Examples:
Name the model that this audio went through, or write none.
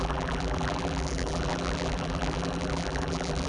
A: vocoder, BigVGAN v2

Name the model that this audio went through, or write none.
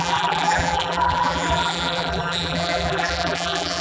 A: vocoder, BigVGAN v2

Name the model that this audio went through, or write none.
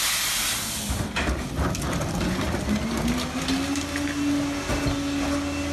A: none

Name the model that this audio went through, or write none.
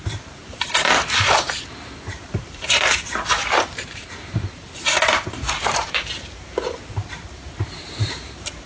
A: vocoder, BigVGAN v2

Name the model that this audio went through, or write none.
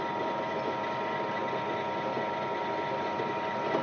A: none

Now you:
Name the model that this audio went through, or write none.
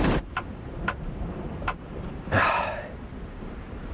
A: vocoder, BigVGAN v2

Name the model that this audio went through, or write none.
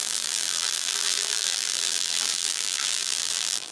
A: vocoder, BigVGAN v2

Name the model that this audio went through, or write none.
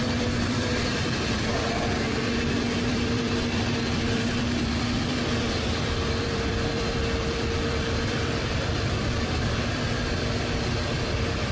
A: vocoder, BigVGAN v2